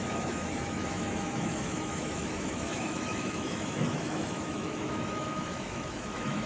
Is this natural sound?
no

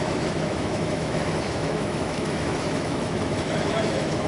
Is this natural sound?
no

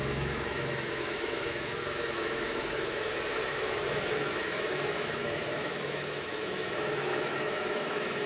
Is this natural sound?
no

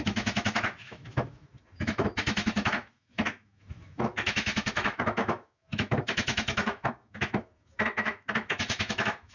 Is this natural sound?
no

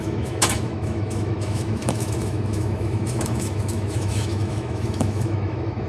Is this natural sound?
no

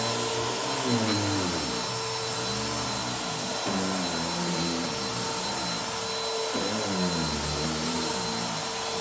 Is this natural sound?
yes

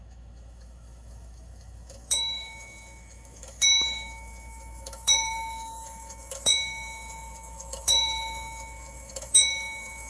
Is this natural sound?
no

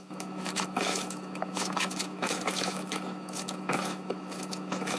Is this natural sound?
no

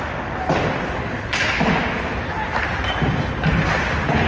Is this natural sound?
yes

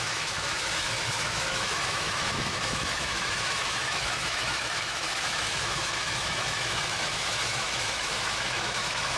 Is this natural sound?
no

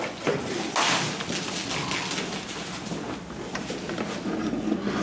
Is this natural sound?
yes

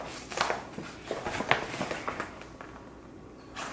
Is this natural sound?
yes